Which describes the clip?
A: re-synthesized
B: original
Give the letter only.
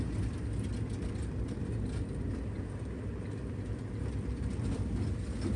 B